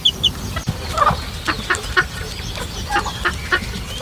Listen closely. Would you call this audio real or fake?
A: real